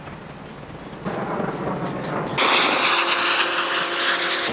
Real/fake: real